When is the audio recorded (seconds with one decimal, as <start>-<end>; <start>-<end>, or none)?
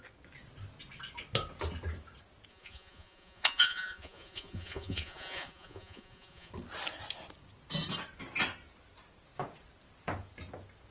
0.0-2.5; 6.5-10.9